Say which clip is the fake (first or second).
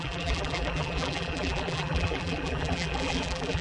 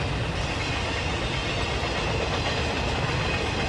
first